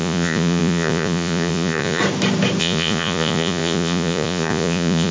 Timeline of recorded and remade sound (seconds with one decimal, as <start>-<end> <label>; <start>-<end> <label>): 0.0-2.0 remade; 2.0-2.6 recorded; 2.6-5.1 remade

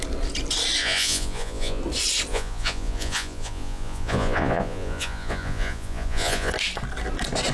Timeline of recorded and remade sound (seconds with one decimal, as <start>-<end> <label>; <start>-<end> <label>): 0.0-0.8 recorded; 0.8-1.8 remade; 1.8-2.3 recorded; 2.3-6.5 remade; 6.5-7.5 recorded

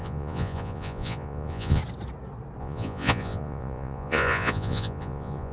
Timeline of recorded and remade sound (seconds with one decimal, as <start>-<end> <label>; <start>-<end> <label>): 0.0-1.8 remade; 1.8-2.6 recorded; 2.6-5.5 remade

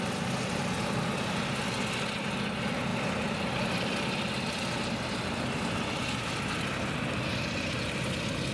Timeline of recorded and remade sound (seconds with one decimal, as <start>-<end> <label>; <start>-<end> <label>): 0.0-8.5 recorded

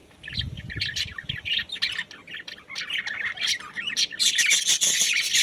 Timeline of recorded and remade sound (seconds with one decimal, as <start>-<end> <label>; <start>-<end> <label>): 0.0-5.4 recorded

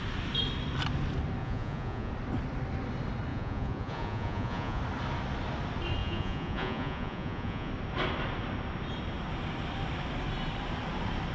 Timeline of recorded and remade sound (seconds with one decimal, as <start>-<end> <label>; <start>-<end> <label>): 0.0-1.4 recorded; 1.4-2.1 remade; 2.1-3.3 recorded; 3.3-4.8 remade; 4.8-6.0 recorded; 6.0-7.7 remade; 7.7-11.3 recorded